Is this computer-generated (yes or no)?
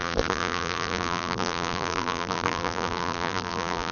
yes